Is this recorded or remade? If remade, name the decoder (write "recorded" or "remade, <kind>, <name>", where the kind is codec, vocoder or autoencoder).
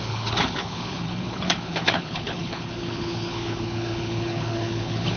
remade, codec, HILCodec